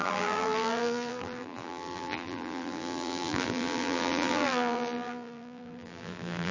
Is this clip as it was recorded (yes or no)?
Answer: no